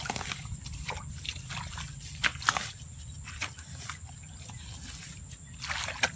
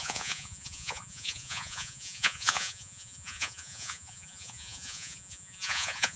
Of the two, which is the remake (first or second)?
second